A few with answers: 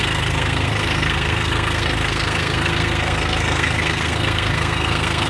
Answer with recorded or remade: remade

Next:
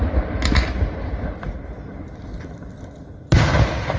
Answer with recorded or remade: recorded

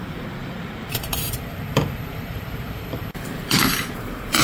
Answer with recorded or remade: remade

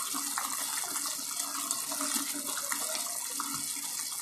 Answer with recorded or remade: recorded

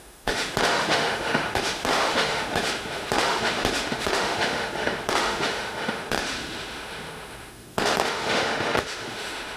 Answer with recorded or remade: remade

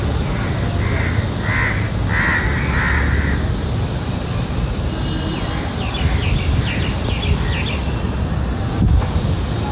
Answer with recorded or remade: recorded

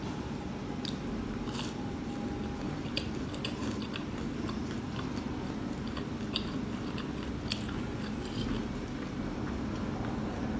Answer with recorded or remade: recorded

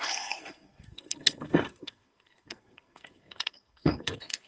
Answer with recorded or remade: remade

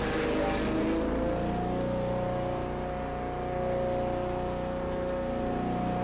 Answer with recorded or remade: recorded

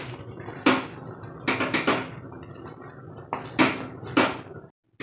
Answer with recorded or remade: recorded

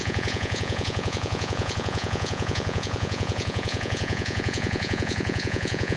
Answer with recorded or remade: remade